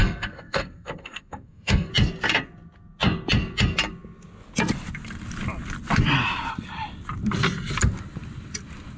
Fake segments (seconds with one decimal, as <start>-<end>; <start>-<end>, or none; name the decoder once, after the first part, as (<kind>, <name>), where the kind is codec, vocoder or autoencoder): 0.0-1.9 (codec, SNAC)